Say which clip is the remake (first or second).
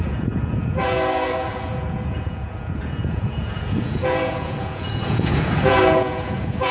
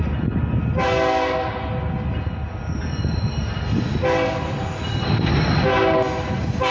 first